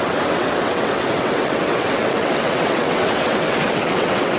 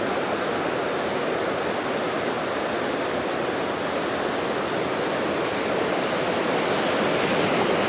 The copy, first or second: first